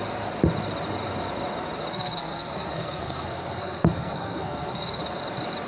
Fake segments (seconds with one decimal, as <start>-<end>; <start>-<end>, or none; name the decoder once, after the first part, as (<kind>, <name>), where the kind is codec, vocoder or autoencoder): 1.9-5.0 (codec, SNAC)

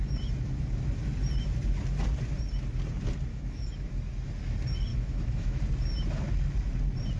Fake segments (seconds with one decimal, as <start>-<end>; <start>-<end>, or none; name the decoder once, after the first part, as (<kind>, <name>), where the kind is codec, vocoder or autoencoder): 3.3-3.9 (autoencoder, DAC-VAE); 4.9-5.6

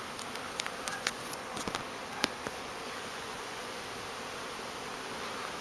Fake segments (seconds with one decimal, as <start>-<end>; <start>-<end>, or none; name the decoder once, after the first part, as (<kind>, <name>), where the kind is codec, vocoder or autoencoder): 0.9-1.6 (vocoder, Vocos); 2.4-3.8

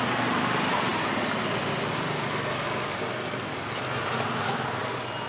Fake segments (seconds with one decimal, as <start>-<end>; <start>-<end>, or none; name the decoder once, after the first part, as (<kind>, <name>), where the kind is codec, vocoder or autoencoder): none